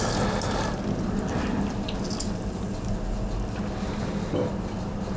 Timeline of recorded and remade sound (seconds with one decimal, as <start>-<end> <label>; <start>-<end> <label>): 0.0-5.2 recorded